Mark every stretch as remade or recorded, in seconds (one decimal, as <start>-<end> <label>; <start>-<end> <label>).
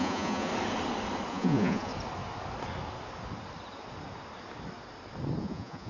0.0-0.5 remade; 0.5-1.3 recorded; 1.3-1.9 remade; 1.9-5.4 recorded; 5.4-5.9 remade